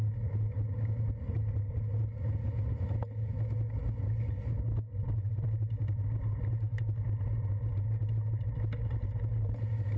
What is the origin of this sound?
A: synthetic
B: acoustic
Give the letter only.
B